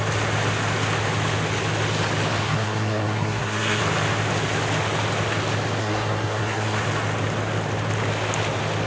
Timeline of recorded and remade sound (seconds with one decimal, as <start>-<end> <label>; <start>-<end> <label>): 0.0-2.4 recorded; 2.4-3.8 remade; 3.8-5.8 recorded; 5.8-6.8 remade; 6.8-8.9 recorded